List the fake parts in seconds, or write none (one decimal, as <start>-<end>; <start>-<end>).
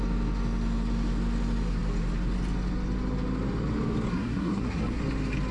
4.1-5.0